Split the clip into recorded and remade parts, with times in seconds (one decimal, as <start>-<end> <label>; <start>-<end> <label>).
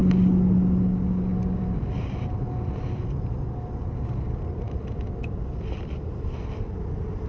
0.0-7.3 recorded